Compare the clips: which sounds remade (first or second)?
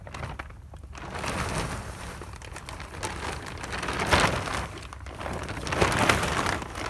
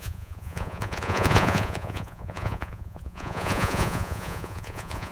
second